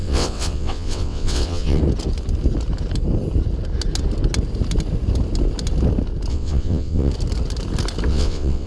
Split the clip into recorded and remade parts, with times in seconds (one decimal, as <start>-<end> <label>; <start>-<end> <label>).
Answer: 0.0-1.8 remade; 1.8-6.3 recorded; 6.3-7.1 remade; 7.1-8.1 recorded; 8.1-8.7 remade